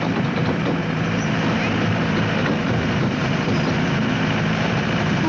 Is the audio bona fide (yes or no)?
no